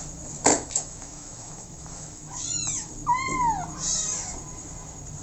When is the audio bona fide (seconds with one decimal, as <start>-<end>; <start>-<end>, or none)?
0.0-0.5; 2.9-5.2